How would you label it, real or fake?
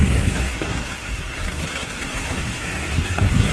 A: fake